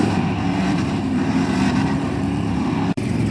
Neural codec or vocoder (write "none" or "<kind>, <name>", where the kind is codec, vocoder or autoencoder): vocoder, BigVGAN v2